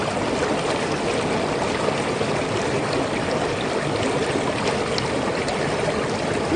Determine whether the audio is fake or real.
real